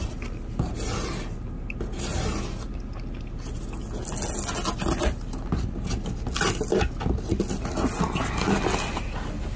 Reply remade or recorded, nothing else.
recorded